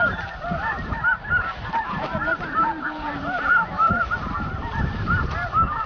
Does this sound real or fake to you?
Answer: fake